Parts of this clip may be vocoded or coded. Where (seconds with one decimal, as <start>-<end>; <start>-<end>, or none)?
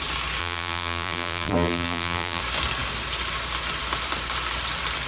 0.4-2.4